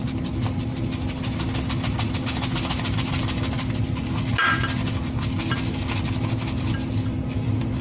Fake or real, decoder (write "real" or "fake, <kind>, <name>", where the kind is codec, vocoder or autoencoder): real